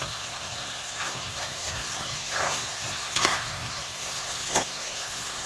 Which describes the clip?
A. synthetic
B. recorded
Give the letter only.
A